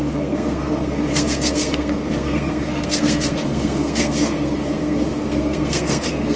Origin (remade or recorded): remade